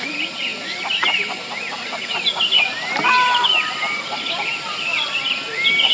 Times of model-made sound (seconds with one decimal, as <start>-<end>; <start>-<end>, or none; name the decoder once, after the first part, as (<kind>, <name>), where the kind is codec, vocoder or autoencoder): none